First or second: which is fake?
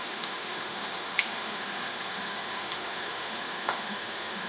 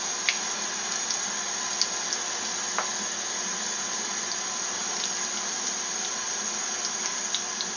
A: first